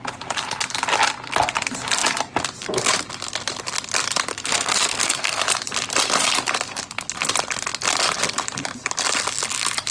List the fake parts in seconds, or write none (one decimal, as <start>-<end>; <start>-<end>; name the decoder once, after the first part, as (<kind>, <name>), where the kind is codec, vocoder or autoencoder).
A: 4.3-5.4 (codec, SNAC)